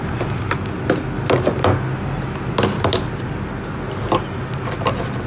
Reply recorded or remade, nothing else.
recorded